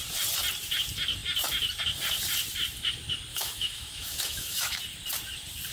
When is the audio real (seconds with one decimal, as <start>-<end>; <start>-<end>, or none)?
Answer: 0.0-3.3; 4.8-5.7